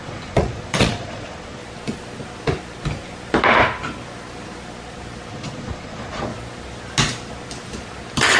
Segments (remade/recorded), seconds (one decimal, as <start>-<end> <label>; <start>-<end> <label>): 0.0-1.6 remade; 1.6-5.3 recorded; 5.3-6.3 remade; 6.3-8.4 recorded

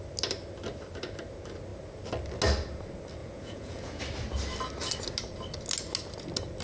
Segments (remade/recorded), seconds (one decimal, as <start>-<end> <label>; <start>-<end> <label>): 0.0-3.2 recorded; 3.2-4.0 remade; 4.0-6.6 recorded

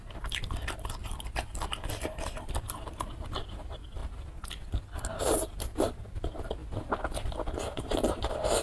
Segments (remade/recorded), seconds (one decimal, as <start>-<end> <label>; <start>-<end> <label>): 0.0-4.0 remade; 4.0-5.2 recorded; 5.2-6.6 remade; 6.6-7.8 recorded; 7.8-8.6 remade

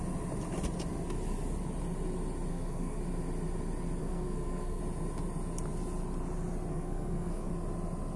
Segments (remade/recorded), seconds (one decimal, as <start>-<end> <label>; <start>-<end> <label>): 0.0-2.5 recorded; 2.5-3.0 remade; 3.0-4.0 recorded; 4.0-4.8 remade; 4.8-6.7 recorded; 6.7-7.5 remade; 7.5-8.2 recorded

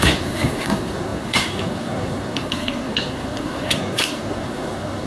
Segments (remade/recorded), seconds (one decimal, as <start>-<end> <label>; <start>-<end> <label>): 0.0-5.1 remade

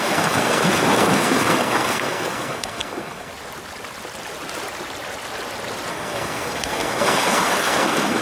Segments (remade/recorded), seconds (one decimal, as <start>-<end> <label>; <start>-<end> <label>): 0.0-3.3 remade; 3.3-5.9 recorded; 5.9-8.2 remade

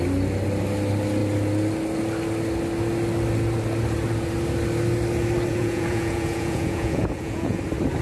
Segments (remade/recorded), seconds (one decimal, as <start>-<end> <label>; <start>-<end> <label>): 0.0-5.5 recorded; 5.5-7.6 remade; 7.6-8.0 recorded